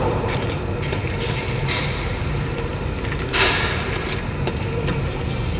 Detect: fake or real fake